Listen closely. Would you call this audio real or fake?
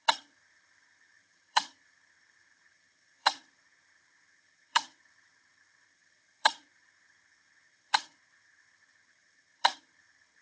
fake